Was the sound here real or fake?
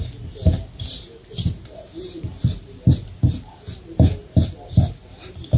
real